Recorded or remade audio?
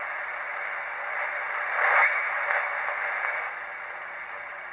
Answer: recorded